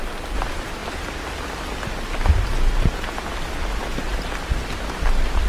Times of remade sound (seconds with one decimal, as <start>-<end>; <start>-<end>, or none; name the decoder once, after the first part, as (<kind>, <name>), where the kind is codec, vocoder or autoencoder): 4.1-5.5 (vocoder, BigVGAN v2)